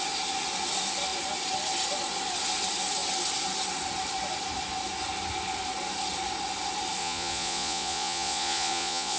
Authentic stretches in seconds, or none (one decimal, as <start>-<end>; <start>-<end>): 0.0-7.0